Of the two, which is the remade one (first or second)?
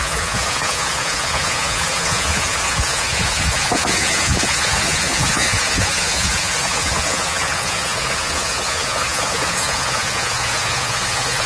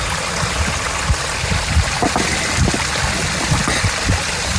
first